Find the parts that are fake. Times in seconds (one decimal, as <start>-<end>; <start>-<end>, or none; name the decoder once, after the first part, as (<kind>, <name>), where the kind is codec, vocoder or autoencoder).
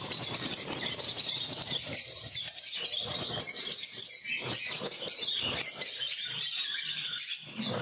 0.0-4.0 (vocoder, BigVGAN v2); 5.4-7.8